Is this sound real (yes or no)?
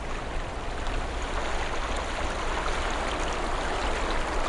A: yes